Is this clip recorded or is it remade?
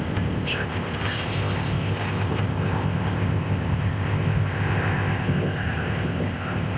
remade